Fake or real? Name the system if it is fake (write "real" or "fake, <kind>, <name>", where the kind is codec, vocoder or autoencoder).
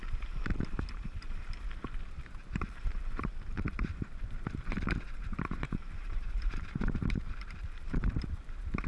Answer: fake, vocoder, BigVGAN v2